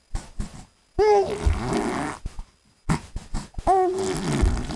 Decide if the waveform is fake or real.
real